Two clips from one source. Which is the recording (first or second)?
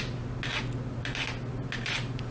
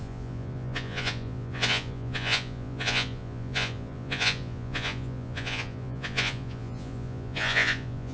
first